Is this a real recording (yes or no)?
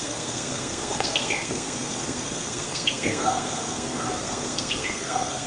no